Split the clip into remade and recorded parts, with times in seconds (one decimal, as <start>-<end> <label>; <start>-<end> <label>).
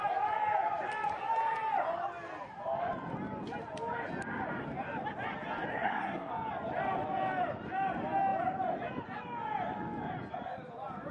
0.0-5.7 recorded; 5.7-6.3 remade; 6.3-11.1 recorded